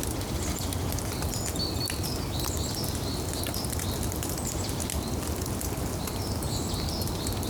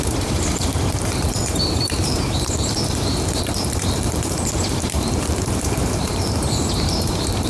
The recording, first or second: first